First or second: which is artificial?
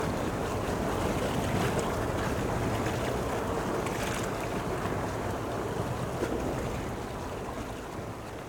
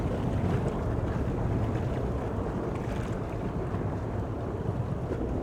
second